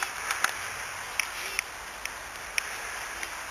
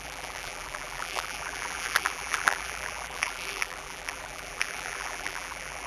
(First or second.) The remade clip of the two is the second